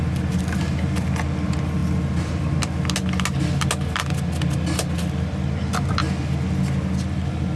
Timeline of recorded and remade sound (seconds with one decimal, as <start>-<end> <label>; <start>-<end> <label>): 0.0-7.6 recorded

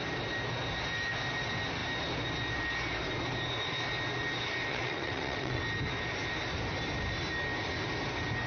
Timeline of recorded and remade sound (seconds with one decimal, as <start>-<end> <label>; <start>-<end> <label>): 0.0-4.7 recorded; 4.7-5.6 remade; 5.6-8.5 recorded